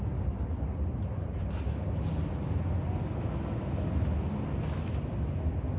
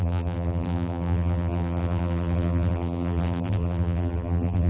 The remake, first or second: second